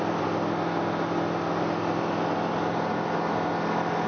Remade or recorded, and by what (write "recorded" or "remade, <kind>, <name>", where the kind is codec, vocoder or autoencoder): recorded